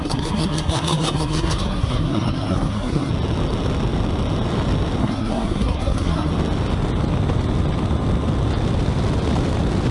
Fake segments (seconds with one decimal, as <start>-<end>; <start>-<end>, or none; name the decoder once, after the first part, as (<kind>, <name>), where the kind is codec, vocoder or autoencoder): 0.0-3.1 (codec, SNAC); 5.0-6.3